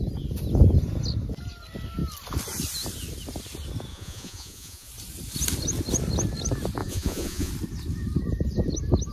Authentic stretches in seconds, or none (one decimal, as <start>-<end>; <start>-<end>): 0.0-3.9; 4.9-6.8; 7.5-9.1